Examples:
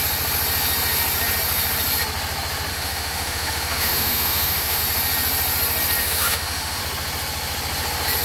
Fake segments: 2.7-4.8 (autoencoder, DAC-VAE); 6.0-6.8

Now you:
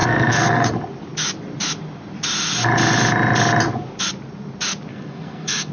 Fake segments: 0.0-0.7 (codec, SNAC); 4.9-5.7

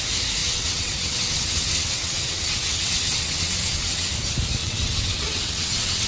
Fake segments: 0.4-4.1 (vocoder, WaveNeXt); 4.6-6.1

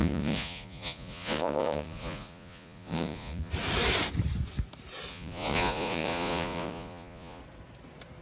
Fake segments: 0.0-3.5 (vocoder, Vocos); 5.1-7.4

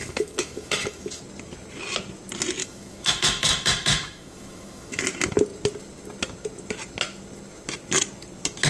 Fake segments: 0.0-1.2 (autoencoder, DAC-VAE); 2.6-5.0

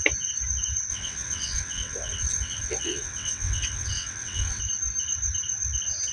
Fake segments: 0.9-4.6 (vocoder, WaveNeXt)